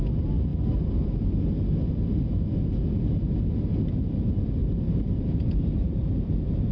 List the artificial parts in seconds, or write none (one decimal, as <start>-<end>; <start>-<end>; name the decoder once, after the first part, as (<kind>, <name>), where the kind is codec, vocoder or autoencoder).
4.6-6.3 (vocoder, BigVGAN v2)